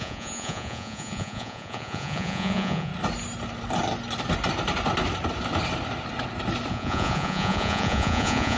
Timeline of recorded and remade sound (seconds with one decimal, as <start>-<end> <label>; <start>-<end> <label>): 0.0-2.9 remade; 2.9-6.7 recorded; 6.7-8.6 remade